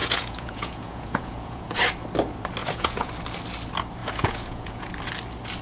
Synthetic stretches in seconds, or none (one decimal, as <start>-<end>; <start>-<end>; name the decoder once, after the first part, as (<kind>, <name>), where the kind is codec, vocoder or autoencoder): 0.0-1.8 (vocoder, Vocos); 2.6-3.1; 4.0-4.9